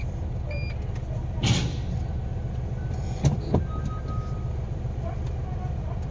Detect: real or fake real